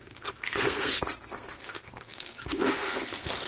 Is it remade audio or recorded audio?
remade